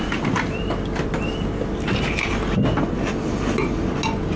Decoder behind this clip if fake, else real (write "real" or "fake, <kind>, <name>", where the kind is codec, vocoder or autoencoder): real